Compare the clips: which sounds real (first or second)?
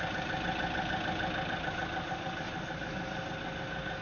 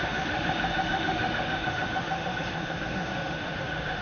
first